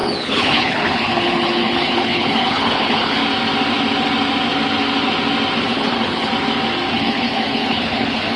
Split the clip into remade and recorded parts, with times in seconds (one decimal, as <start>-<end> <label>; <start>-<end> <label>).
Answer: 0.0-3.2 remade; 3.2-5.6 recorded; 5.6-6.3 remade; 6.3-6.9 recorded; 6.9-8.4 remade